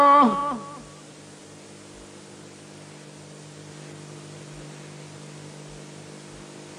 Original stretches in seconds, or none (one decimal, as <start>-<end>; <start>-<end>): 0.0-6.8